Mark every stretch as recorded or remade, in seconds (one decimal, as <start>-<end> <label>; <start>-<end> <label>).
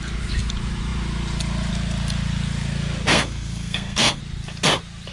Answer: 0.0-3.1 recorded; 3.1-4.2 remade; 4.2-5.1 recorded